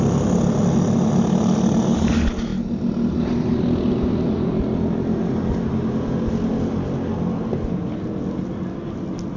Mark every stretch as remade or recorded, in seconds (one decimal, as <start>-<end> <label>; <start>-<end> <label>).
0.0-9.4 recorded